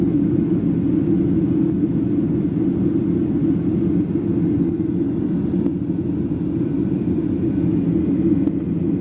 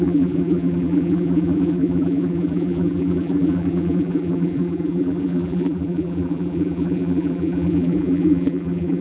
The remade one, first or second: second